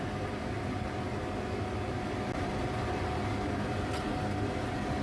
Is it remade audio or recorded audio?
recorded